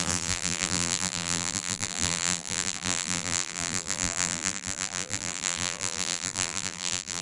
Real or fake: fake